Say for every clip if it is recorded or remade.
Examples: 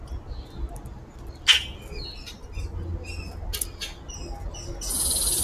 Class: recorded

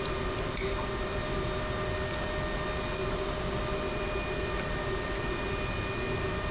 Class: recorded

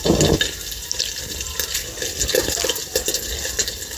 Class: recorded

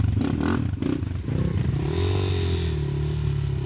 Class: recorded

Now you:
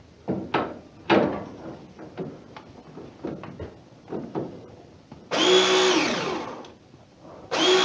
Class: recorded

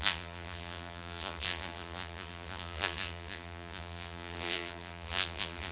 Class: remade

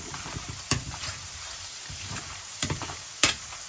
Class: remade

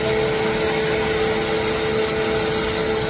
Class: recorded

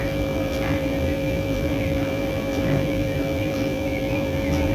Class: remade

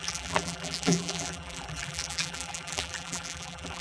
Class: remade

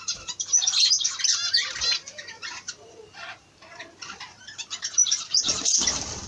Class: remade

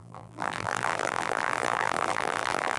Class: remade